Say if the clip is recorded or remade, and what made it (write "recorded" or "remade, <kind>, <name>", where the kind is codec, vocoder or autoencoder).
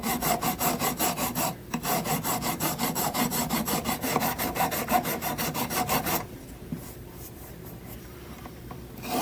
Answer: remade, vocoder, BigVGAN v2